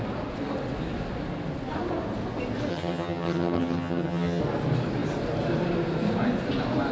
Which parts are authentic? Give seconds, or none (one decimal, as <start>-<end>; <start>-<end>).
0.0-2.7; 4.4-6.9